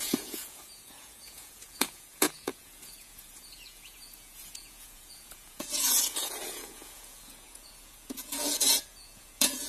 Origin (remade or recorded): remade